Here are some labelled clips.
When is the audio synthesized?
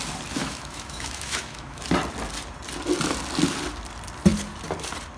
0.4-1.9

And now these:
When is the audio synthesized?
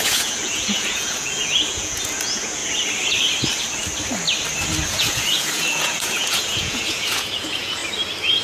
0.0-2.6; 4.9-7.8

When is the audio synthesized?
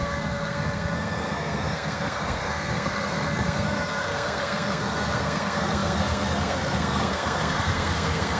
0.0-8.4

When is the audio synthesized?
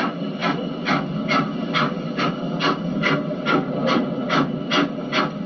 none